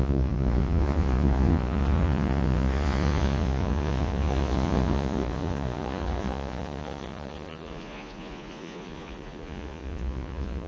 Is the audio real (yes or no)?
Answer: no